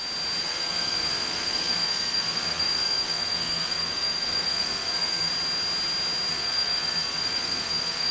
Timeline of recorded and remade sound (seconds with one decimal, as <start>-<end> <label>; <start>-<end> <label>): 0.0-0.4 recorded; 0.4-5.3 remade; 5.3-6.3 recorded; 6.3-8.1 remade